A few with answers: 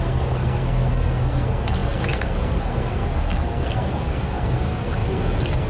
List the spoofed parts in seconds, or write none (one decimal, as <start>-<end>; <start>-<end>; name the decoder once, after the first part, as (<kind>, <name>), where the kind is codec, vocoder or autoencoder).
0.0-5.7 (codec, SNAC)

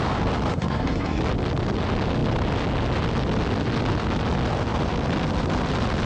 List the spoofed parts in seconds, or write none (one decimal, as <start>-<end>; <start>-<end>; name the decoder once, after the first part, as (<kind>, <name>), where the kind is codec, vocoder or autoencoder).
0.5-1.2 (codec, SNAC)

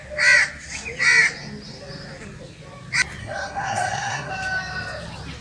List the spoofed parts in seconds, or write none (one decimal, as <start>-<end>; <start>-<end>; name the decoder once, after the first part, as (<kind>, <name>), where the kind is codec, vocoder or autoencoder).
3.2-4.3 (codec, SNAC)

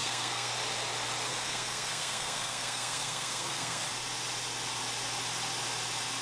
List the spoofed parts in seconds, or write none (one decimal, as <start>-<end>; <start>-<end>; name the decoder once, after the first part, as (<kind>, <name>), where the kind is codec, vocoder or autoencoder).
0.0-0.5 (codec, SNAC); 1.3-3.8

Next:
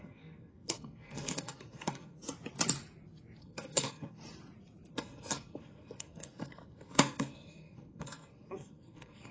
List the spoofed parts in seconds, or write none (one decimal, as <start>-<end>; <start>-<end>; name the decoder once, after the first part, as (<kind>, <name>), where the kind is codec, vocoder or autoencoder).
0.0-2.2 (codec, SNAC); 3.4-4.2; 4.9-9.3

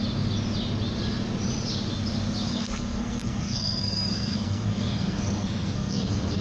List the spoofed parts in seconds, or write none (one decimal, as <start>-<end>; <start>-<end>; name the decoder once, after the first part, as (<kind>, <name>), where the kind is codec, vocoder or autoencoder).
2.5-6.4 (codec, SNAC)

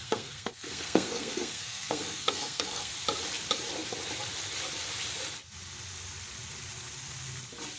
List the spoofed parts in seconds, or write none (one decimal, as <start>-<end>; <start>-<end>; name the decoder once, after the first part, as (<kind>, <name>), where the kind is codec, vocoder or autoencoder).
0.0-2.9 (codec, SNAC)

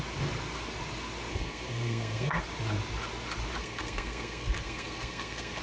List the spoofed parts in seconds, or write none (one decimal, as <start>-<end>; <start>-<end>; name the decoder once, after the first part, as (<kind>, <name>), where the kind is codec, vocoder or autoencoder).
1.3-2.4 (codec, SNAC); 3.6-5.6